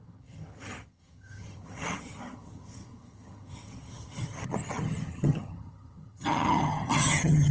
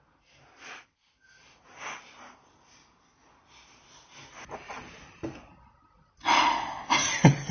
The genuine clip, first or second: second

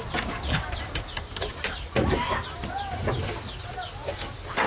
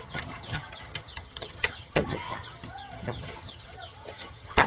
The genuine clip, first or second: first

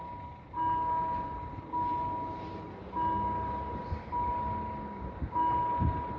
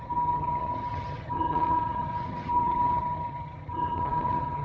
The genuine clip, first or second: first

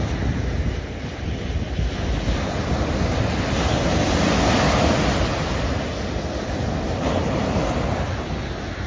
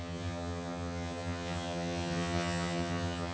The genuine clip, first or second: first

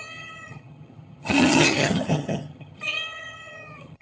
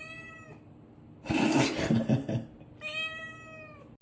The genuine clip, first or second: second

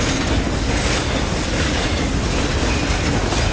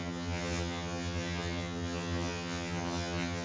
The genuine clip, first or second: first